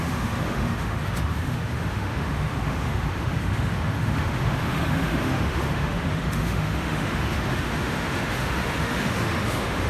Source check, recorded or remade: remade